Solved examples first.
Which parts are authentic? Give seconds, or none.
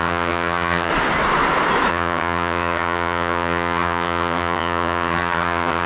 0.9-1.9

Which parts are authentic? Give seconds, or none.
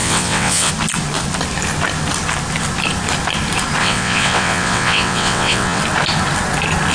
0.7-3.8; 5.8-6.9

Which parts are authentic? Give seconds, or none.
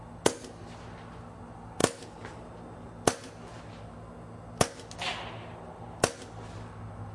0.0-7.1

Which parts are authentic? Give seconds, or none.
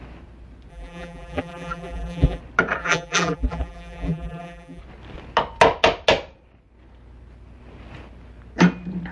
0.0-0.7; 2.4-2.8; 4.8-9.1